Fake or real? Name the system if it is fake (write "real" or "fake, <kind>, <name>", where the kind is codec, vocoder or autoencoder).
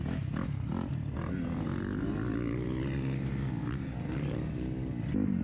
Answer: real